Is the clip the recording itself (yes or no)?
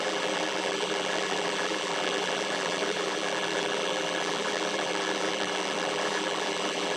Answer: no